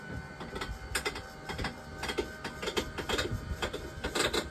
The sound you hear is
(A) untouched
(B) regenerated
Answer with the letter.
A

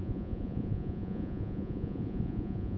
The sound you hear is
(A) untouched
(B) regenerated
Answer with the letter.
B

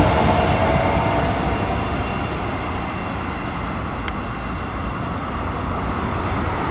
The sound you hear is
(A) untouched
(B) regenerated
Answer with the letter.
A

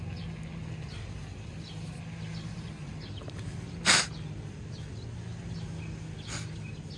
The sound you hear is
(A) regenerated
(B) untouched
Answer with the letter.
B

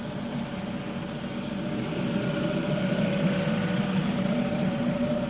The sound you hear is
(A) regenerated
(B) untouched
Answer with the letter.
B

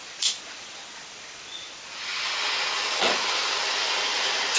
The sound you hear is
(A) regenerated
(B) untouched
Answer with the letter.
B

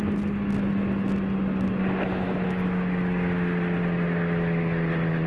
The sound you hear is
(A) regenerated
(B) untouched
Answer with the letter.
B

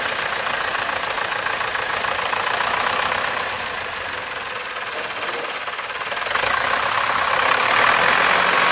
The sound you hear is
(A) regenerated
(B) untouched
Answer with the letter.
B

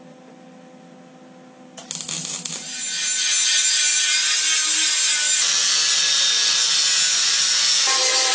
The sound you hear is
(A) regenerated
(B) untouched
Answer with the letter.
B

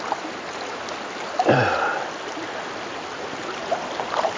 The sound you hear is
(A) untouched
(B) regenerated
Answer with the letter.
A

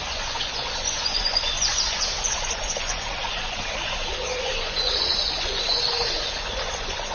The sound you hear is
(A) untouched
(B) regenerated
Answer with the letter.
B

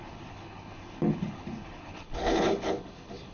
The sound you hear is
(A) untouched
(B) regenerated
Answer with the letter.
B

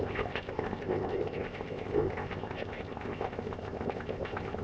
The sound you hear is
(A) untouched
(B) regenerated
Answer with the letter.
B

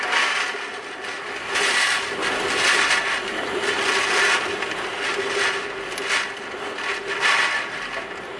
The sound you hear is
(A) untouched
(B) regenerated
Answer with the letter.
A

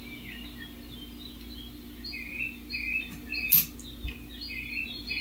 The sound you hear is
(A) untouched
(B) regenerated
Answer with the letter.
A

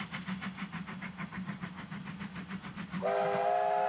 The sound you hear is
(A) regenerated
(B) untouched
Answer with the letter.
B